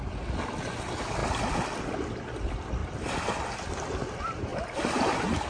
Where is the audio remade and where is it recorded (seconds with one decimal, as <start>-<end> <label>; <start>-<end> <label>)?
0.0-5.5 recorded